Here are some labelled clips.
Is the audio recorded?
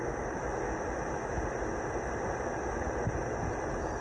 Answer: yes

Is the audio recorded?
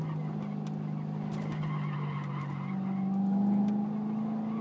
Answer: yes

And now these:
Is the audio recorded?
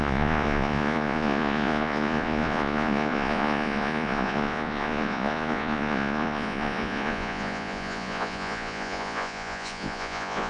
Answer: no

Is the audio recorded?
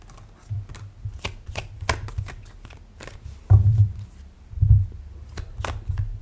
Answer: yes